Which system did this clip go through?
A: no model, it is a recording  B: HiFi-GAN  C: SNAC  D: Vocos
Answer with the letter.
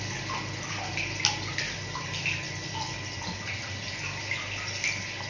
A